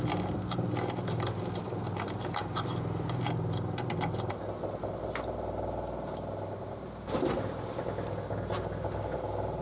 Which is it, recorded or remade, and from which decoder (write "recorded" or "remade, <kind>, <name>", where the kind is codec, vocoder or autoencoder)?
recorded